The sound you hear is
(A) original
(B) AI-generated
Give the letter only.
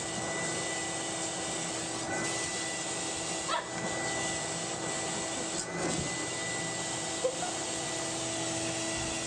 A